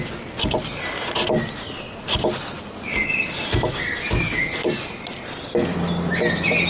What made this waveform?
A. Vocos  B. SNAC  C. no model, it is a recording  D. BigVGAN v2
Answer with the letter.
C